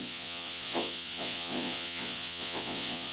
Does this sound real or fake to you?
fake